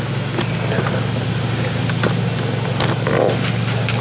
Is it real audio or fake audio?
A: real